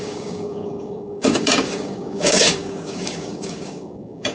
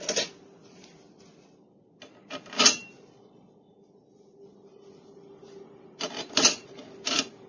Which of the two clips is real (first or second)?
second